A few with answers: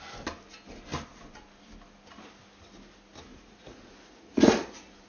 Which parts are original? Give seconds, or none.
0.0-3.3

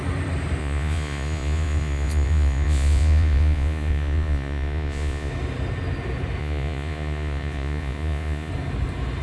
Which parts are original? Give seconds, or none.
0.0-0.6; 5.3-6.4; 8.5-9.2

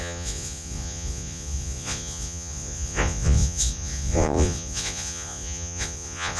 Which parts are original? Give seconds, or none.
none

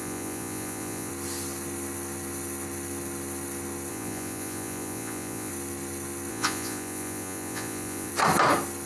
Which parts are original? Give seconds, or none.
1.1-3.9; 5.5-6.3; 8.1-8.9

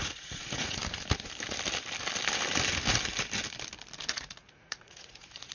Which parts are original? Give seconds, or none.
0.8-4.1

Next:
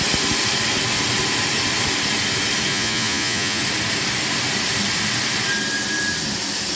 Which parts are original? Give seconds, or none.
0.0-2.7; 3.6-6.8